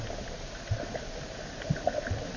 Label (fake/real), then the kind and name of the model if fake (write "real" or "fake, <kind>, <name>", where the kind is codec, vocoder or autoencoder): real